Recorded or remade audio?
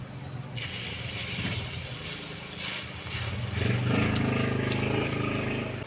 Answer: recorded